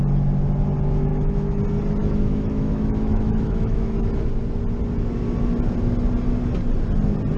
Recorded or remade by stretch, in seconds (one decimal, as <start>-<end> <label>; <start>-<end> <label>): 0.0-1.1 recorded; 1.1-1.6 remade; 1.6-2.0 recorded; 2.0-4.1 remade; 4.1-7.4 recorded